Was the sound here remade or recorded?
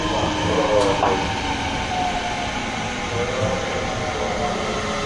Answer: recorded